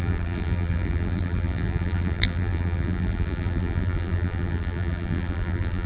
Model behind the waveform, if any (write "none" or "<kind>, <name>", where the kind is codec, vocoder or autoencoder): vocoder, BigVGAN v2